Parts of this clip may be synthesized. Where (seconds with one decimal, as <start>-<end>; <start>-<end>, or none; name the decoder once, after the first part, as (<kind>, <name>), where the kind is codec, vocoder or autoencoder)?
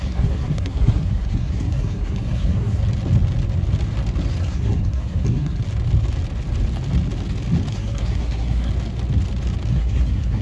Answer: 0.0-2.8 (codec, SNAC); 4.4-5.6; 7.7-8.7; 9.7-10.4